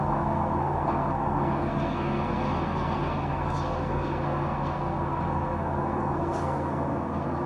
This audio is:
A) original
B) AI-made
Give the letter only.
B